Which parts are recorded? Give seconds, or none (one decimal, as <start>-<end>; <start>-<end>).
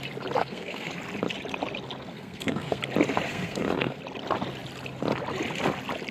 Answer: 0.0-0.4; 0.9-2.1; 2.8-3.3; 4.0-6.1